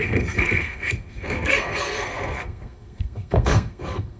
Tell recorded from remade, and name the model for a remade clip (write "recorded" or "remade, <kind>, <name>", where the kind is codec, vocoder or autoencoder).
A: remade, codec, SNAC